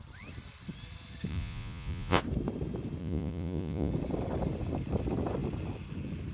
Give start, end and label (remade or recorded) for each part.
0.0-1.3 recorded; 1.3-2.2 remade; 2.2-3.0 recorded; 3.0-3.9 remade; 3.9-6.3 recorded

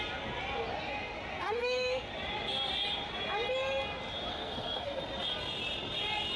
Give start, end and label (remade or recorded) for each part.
0.0-1.3 recorded; 1.3-2.1 remade; 2.1-4.3 recorded; 4.3-5.0 remade; 5.0-6.4 recorded

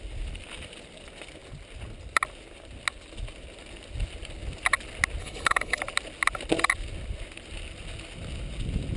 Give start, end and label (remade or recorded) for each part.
0.0-5.2 recorded; 5.2-5.8 remade; 5.8-9.0 recorded

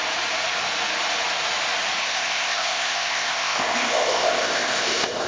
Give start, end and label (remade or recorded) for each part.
0.0-2.0 recorded; 2.0-5.3 remade

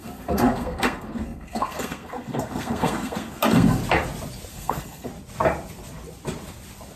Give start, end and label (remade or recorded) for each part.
0.0-3.8 remade; 3.8-4.5 recorded; 4.5-5.1 remade; 5.1-7.0 recorded

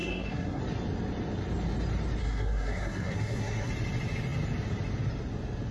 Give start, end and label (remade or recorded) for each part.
0.0-0.6 remade; 0.6-2.2 recorded; 2.2-3.7 remade; 3.7-5.7 recorded

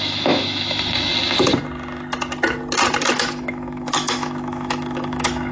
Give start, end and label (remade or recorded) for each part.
0.0-1.1 remade; 1.1-3.1 recorded; 3.1-5.5 remade

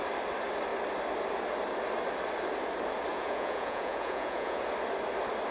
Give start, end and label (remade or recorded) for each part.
0.0-3.1 recorded; 3.1-4.6 remade; 4.6-5.5 recorded